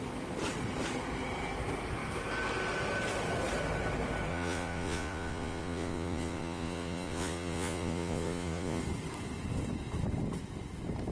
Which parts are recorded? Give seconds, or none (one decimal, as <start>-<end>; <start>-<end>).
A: 0.0-4.3; 8.8-11.1